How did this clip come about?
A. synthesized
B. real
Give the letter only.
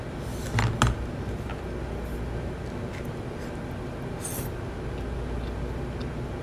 B